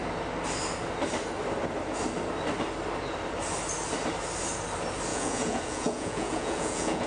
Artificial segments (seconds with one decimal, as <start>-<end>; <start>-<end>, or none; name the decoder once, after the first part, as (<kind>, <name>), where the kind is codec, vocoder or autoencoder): 5.1-7.1 (vocoder, Vocos)